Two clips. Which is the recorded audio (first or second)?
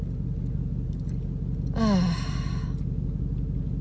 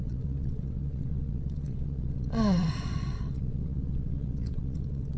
first